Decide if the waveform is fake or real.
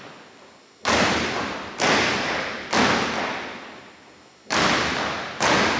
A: real